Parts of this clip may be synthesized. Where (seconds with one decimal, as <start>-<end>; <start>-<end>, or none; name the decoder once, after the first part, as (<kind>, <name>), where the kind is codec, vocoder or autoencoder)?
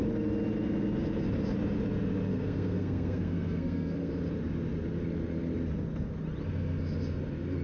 2.3-4.1 (codec, SNAC)